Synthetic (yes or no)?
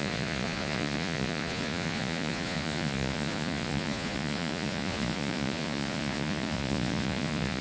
yes